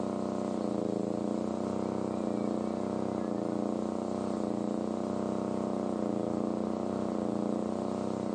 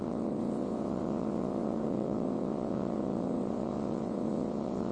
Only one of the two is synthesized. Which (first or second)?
second